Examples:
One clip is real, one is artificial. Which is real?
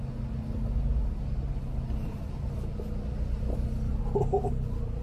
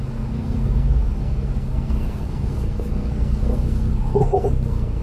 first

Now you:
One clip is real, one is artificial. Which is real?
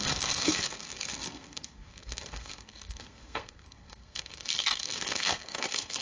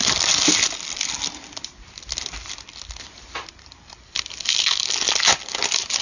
second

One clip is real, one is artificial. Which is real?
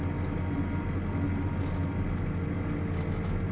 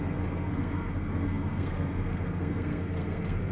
first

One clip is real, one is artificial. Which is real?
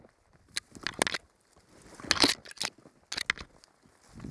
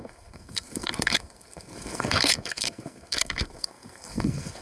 first